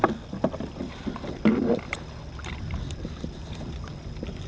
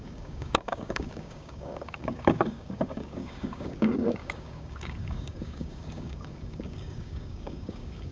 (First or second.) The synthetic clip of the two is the second